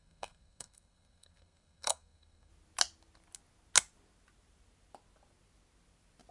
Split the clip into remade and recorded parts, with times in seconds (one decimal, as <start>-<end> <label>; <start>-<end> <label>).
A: 0.0-2.5 remade; 2.5-6.3 recorded